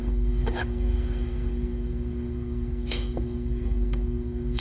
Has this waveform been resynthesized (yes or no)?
yes